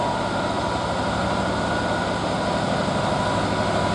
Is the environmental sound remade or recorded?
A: recorded